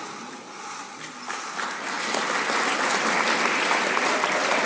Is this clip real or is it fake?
real